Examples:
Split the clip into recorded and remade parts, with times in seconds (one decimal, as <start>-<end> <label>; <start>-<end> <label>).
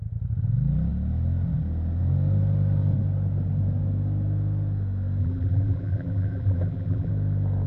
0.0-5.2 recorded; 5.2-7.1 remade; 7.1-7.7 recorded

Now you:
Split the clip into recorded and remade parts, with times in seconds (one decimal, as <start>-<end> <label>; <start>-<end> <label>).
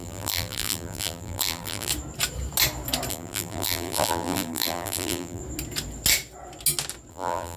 0.0-1.9 remade; 1.9-3.1 recorded; 3.1-5.4 remade; 5.4-7.1 recorded; 7.1-7.6 remade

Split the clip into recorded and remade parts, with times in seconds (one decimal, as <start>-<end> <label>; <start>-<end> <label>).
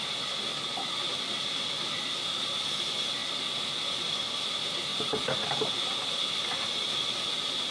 0.0-7.7 recorded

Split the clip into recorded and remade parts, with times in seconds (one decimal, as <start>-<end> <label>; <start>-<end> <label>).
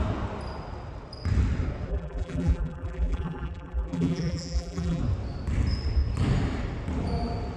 0.0-1.9 recorded; 1.9-5.0 remade; 5.0-7.6 recorded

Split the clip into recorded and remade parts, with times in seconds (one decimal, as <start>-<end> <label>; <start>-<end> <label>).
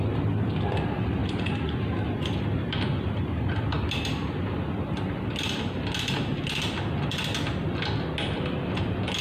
0.0-1.2 recorded; 1.2-5.5 remade; 5.5-9.2 recorded